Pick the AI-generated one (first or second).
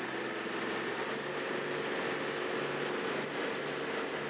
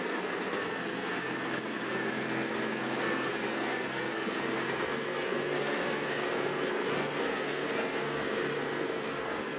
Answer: second